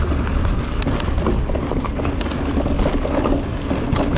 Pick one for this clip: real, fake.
real